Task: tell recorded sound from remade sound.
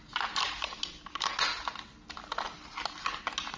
recorded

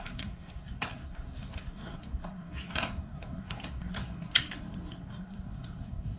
remade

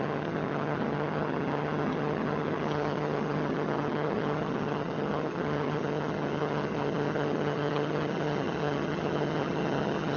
remade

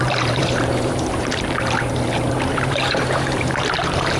remade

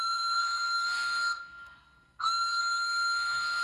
remade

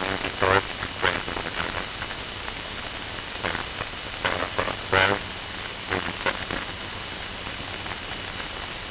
recorded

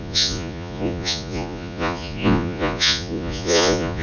remade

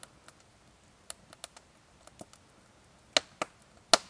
recorded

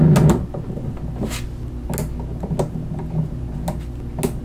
recorded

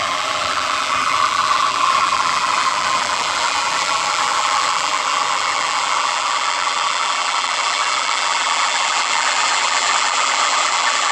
remade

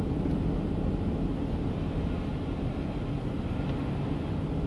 recorded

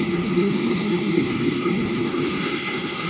remade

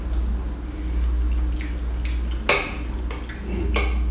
recorded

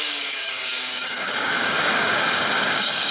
remade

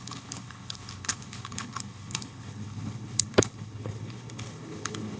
remade